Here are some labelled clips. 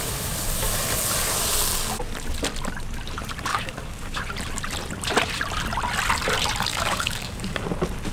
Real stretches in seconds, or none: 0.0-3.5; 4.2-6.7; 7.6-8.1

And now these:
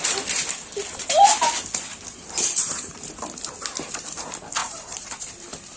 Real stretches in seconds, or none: 0.0-1.9; 3.2-4.6

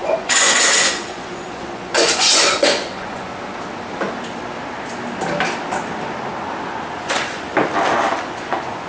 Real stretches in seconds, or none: 3.3-7.0; 7.5-8.1

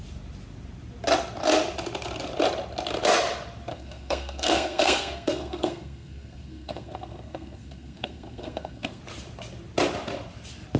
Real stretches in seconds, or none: 0.0-3.7; 9.0-10.8